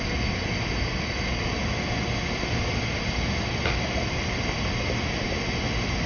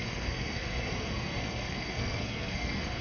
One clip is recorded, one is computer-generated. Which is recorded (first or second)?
first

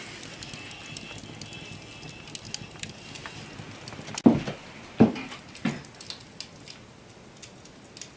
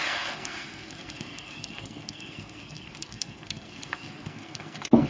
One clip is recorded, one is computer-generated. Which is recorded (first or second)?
first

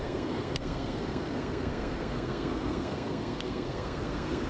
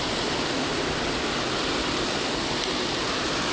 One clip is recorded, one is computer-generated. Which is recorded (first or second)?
second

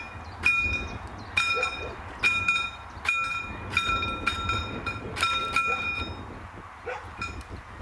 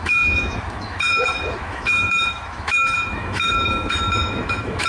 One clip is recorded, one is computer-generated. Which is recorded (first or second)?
first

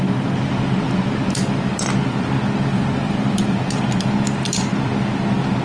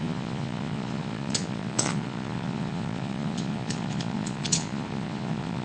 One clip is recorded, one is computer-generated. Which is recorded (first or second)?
first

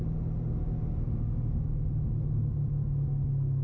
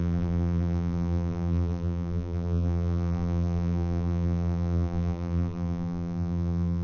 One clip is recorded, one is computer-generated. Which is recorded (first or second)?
first